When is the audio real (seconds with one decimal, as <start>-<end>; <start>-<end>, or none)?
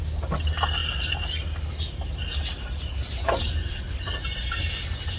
0.0-5.2